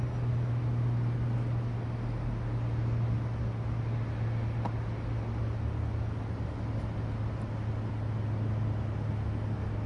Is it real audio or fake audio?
real